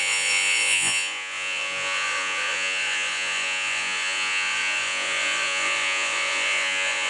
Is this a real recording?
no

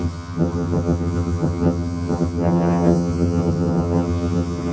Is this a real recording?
no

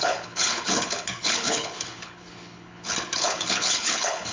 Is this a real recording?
no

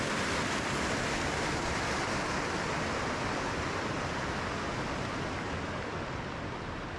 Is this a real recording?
yes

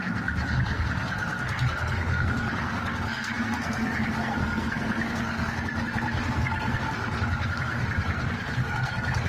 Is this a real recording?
no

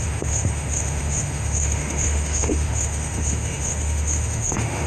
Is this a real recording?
no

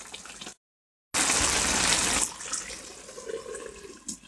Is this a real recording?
yes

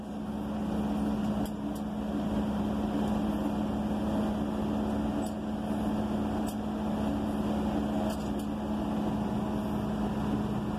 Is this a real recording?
yes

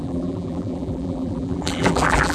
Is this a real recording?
no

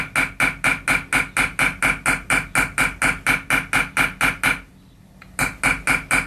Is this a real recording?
yes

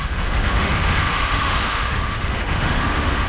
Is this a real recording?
no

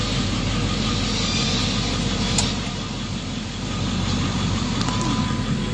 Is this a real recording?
yes